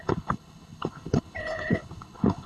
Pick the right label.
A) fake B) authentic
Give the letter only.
A